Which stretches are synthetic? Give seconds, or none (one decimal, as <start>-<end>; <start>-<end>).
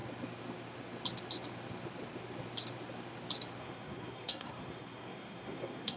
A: 3.6-6.0